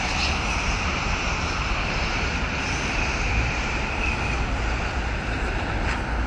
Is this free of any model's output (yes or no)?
yes